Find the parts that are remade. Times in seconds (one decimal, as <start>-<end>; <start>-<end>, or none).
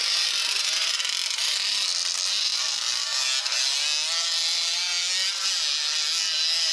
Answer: none